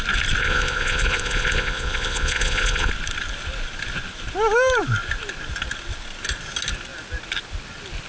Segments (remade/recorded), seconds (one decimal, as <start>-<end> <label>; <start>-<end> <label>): 0.0-0.4 recorded; 0.4-2.9 remade; 2.9-8.1 recorded